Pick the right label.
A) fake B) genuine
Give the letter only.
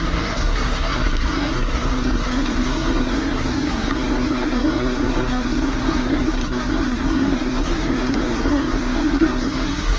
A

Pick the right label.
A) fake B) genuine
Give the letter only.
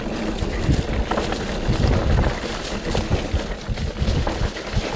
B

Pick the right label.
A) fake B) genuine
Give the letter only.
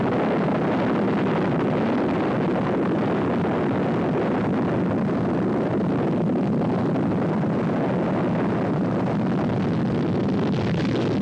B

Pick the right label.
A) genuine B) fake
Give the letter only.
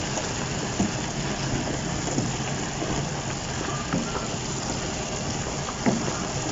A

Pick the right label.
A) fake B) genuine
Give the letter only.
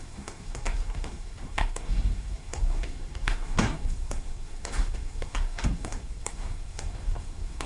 A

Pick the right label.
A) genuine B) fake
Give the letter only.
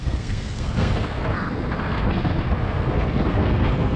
B